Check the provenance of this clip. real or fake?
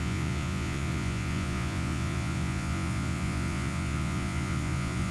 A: fake